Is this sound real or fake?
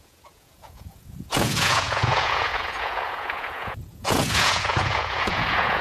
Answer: fake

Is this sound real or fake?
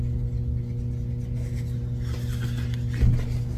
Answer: real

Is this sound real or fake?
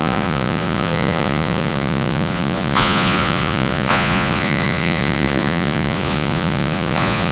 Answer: fake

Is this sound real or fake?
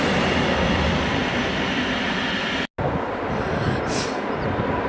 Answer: real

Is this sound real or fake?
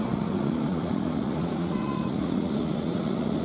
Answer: fake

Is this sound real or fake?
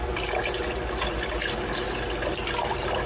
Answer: real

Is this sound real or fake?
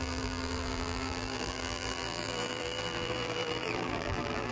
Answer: fake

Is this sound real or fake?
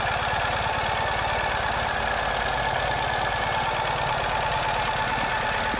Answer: real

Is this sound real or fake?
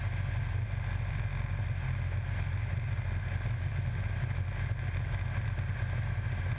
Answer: real